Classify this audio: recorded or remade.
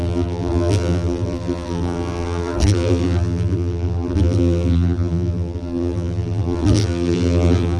remade